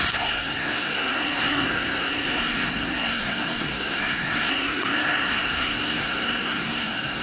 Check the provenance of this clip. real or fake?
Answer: fake